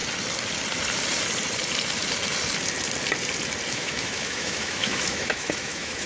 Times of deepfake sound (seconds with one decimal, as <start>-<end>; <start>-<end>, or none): 3.7-6.1